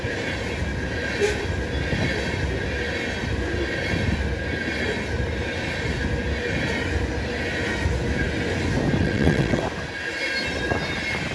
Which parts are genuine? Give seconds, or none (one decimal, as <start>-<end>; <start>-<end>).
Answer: 0.0-9.0; 9.6-11.3